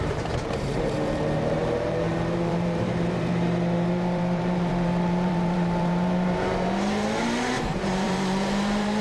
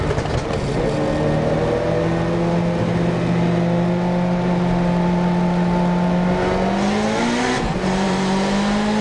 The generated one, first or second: first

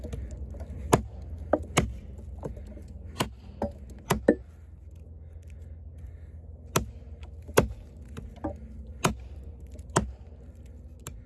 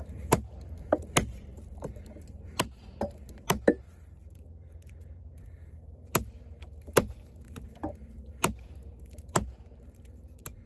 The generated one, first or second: second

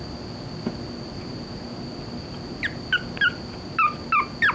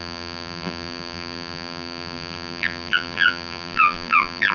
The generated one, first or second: second